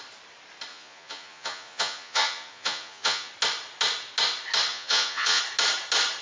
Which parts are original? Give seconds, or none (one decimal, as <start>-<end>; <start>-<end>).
0.0-0.7; 3.3-4.7; 5.4-6.2